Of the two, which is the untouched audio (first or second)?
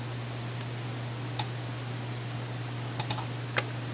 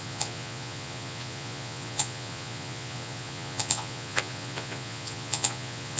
first